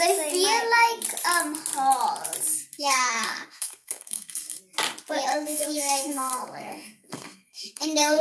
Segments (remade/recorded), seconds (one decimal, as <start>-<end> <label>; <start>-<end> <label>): 0.0-2.7 recorded; 2.7-4.6 remade; 4.6-5.3 recorded; 5.3-8.2 remade